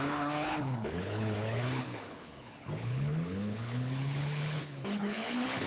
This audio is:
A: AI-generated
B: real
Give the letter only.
A